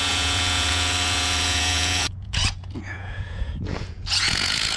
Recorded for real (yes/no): no